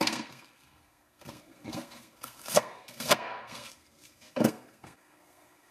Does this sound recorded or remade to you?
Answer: remade